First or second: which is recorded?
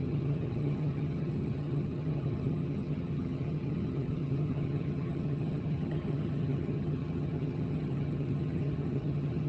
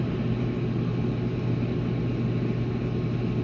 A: second